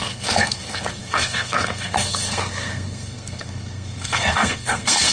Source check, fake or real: fake